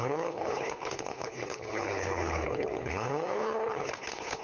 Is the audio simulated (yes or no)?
yes